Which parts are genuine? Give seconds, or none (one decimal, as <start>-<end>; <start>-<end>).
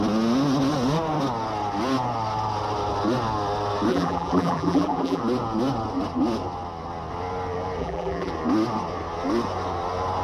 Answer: 0.0-3.9; 5.2-7.8; 8.3-10.2